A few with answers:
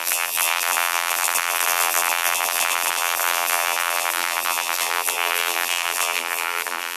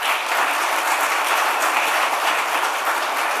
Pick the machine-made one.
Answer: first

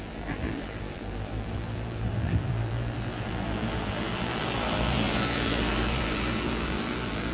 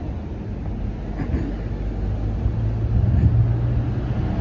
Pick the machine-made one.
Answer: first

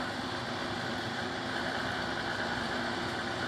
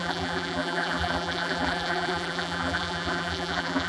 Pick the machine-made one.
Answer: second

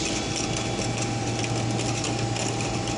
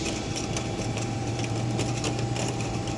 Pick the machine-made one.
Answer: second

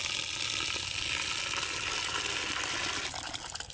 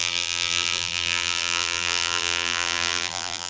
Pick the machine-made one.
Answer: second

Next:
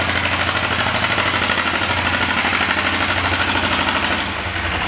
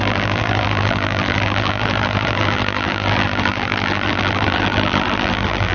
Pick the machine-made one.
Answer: second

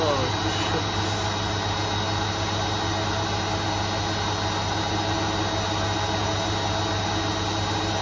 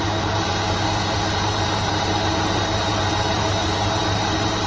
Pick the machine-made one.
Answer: second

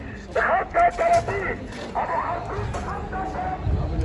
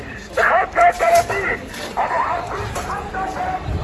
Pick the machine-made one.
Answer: second